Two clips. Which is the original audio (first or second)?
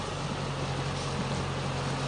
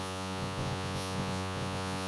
first